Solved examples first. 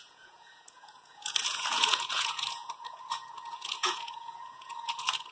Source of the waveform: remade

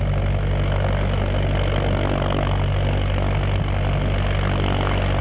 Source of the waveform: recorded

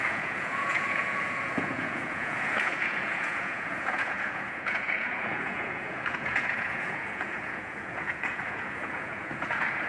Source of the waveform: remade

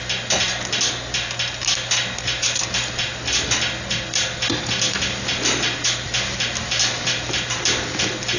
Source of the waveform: recorded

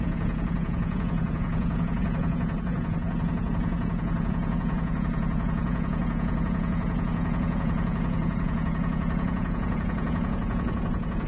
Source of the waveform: remade